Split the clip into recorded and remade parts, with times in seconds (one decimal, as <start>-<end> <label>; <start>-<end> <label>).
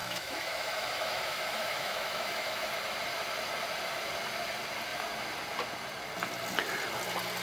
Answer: 0.0-2.7 remade; 2.7-7.4 recorded